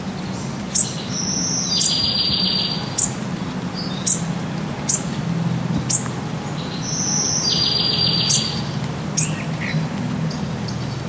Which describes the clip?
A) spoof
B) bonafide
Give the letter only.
B